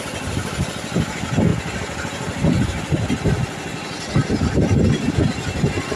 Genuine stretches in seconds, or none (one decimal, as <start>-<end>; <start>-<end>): 0.0-6.0